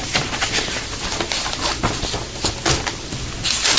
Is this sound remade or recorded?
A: recorded